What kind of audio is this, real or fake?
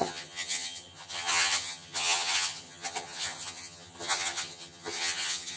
fake